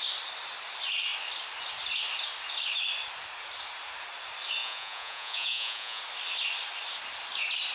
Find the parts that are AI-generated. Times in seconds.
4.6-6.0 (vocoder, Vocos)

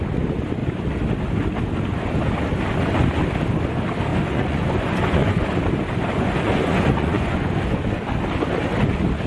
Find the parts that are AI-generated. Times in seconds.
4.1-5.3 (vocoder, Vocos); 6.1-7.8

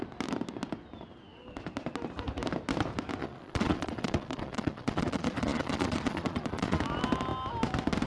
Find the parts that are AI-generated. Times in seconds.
3.2-6.8 (vocoder, Vocos)

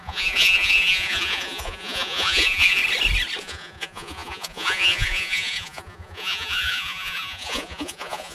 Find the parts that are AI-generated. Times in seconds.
0.0-2.8 (vocoder, Vocos); 3.4-8.3

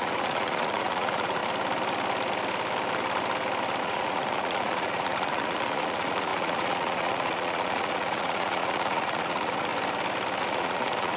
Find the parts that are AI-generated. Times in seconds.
0.0-1.4 (vocoder, Vocos); 3.8-9.7; 10.4-11.2